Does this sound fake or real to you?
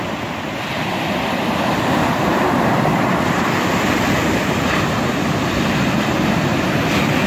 fake